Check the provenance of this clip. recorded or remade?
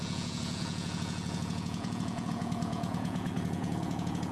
remade